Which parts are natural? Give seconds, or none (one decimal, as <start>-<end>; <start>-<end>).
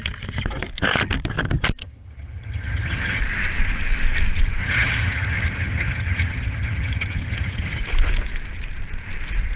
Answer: 0.0-1.8; 3.2-4.6; 7.8-9.6